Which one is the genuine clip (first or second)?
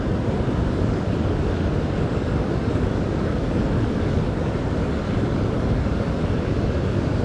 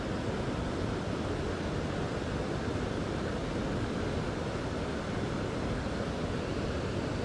second